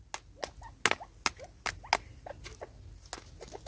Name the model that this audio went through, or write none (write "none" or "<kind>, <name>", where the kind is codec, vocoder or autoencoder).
none